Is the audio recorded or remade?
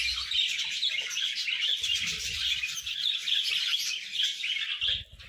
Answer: recorded